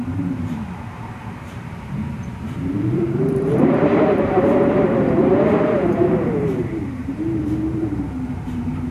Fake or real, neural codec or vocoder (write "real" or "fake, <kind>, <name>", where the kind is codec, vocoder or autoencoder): fake, vocoder, BigVGAN v2